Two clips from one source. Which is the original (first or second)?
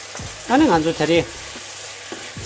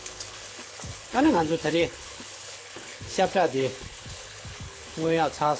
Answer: first